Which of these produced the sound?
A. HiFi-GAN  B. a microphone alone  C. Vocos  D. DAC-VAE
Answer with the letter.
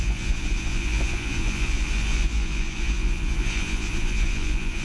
C